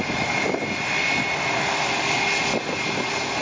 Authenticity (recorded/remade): recorded